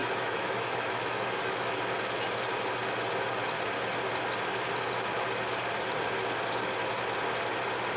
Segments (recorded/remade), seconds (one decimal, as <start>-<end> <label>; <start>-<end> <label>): 0.0-1.8 remade; 1.8-8.0 recorded